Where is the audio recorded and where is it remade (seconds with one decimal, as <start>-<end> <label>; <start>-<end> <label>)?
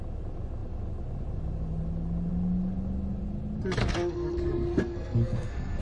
0.0-3.8 recorded; 3.8-5.8 remade